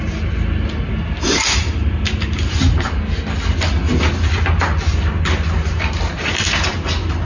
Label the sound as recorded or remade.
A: recorded